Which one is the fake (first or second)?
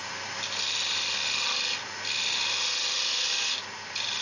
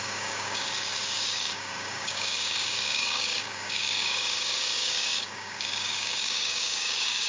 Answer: second